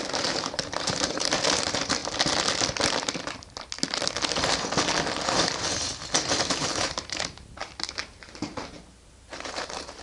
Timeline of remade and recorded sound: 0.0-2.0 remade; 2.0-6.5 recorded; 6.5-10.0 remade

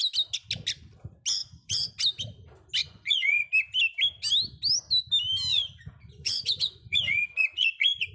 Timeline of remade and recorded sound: 0.0-1.4 recorded; 1.4-1.9 remade; 1.9-2.8 recorded; 2.8-3.5 remade; 3.5-5.5 recorded; 5.5-8.1 remade